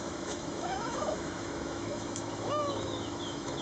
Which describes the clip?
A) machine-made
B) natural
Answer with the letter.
A